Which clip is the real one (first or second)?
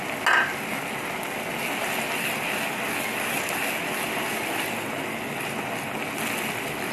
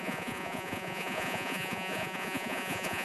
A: first